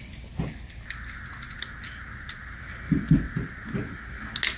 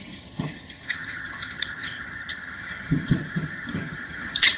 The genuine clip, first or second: first